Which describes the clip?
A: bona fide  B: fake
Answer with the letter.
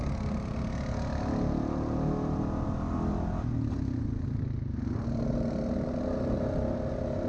A